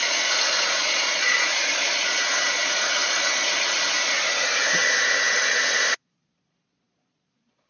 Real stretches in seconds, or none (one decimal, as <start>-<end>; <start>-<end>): 3.5-5.4